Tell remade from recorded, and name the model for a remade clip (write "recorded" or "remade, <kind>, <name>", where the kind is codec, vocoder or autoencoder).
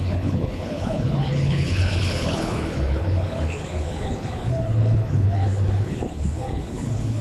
remade, codec, HILCodec